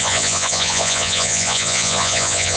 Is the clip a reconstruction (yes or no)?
yes